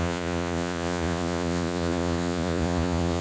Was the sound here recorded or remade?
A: remade